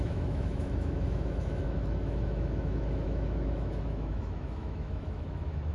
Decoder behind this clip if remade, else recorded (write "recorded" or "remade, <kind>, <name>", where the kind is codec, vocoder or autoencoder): remade, autoencoder, DAC-VAE